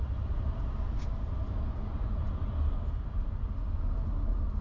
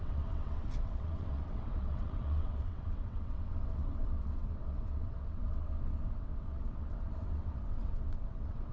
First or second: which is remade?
second